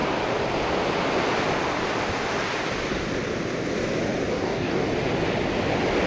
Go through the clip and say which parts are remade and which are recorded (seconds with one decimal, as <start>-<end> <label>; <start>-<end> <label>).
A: 0.0-4.3 recorded; 4.3-4.9 remade; 4.9-6.1 recorded